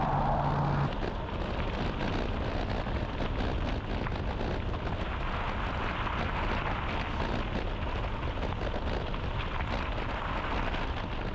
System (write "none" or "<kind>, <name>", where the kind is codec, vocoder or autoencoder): none